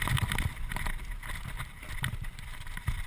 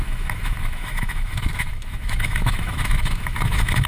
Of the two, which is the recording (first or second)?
first